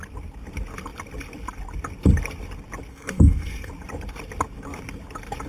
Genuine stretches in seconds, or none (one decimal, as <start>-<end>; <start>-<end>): 0.0-2.9; 3.7-5.5